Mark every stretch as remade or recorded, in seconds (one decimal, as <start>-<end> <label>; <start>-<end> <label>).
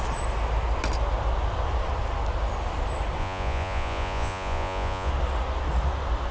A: 0.0-3.2 recorded; 3.2-5.1 remade; 5.1-6.3 recorded